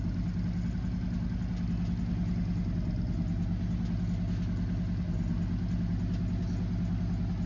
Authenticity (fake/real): real